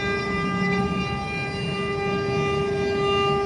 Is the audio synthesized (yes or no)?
no